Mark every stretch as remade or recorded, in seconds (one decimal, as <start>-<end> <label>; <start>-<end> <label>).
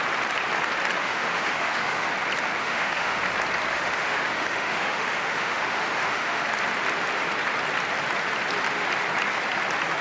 0.0-1.0 recorded; 1.0-2.1 remade; 2.1-2.6 recorded; 2.6-3.2 remade; 3.2-3.7 recorded; 3.7-6.4 remade; 6.4-10.0 recorded